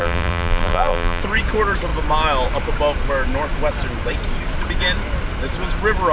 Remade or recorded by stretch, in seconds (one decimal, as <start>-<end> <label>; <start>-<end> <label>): 0.0-1.2 remade; 1.2-6.1 recorded